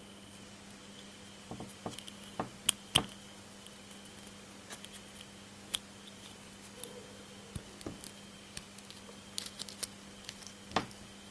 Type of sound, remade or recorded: recorded